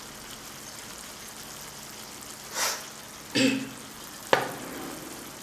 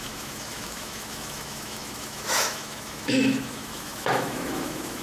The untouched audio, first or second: first